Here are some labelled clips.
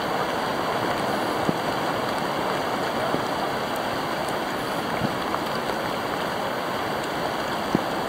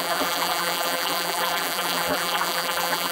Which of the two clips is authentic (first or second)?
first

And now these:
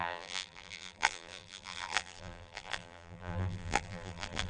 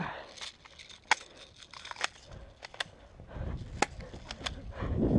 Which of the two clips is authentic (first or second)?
second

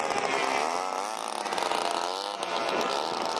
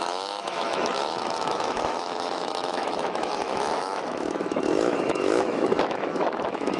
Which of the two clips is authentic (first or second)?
first